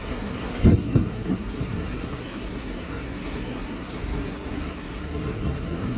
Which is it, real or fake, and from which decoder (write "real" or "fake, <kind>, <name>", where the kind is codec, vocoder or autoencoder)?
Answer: fake, codec, SNAC